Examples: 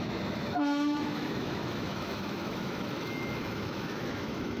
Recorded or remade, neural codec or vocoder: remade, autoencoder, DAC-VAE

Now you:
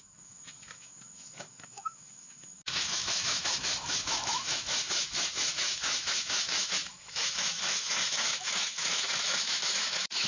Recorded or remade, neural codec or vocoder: remade, autoencoder, DAC-VAE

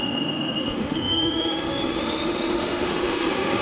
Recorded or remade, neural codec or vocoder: remade, autoencoder, DAC-VAE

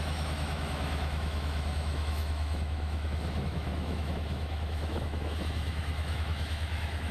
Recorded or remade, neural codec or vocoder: remade, autoencoder, DAC-VAE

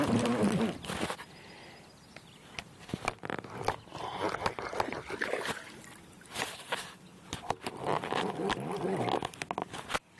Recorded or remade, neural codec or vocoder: recorded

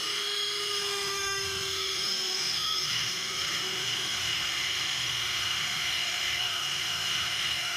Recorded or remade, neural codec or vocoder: remade, autoencoder, DAC-VAE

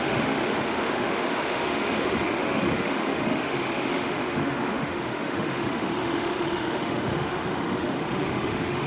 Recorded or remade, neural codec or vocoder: remade, autoencoder, DAC-VAE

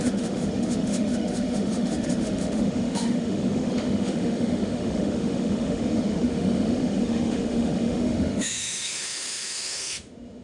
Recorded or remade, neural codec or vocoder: remade, autoencoder, DAC-VAE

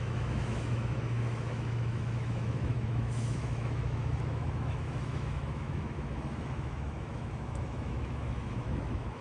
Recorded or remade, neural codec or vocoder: remade, autoencoder, DAC-VAE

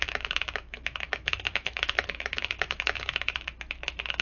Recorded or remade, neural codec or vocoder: remade, autoencoder, DAC-VAE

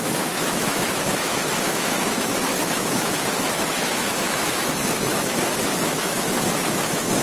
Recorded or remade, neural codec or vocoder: remade, autoencoder, DAC-VAE